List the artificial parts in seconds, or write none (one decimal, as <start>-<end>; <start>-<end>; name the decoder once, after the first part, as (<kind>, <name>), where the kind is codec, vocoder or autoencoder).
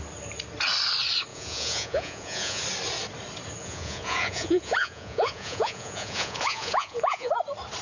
1.3-2.6 (vocoder, Vocos); 3.6-7.3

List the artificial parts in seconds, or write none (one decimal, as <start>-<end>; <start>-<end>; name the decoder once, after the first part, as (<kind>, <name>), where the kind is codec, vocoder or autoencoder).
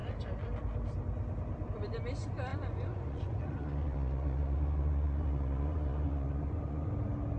2.5-6.9 (vocoder, Vocos)